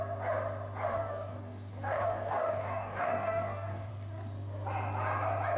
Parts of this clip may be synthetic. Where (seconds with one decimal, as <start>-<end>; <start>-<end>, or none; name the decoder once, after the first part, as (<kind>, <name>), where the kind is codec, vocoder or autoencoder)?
0.9-3.9 (codec, DAC)